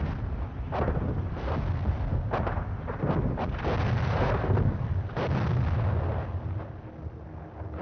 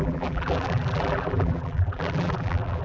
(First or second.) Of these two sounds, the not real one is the second